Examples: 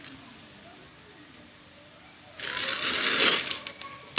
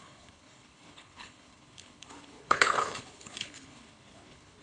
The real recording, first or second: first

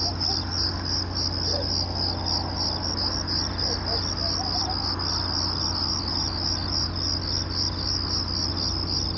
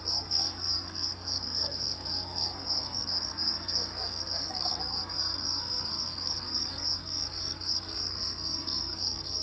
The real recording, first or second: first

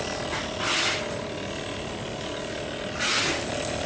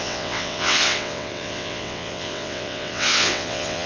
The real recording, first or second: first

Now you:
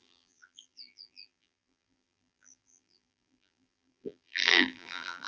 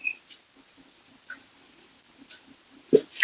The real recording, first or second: second